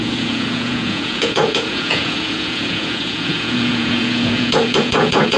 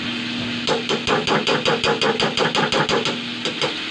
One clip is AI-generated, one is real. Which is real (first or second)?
second